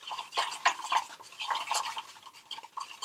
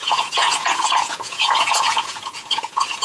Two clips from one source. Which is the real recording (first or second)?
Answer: first